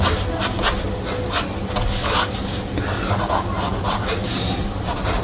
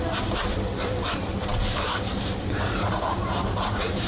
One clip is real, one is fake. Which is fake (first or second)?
second